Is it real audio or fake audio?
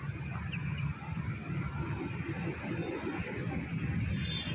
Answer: real